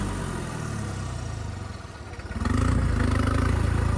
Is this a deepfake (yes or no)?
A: no